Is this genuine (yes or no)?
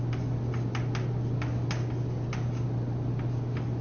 yes